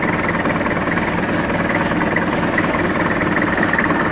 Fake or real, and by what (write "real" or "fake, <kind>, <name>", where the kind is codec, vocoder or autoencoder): real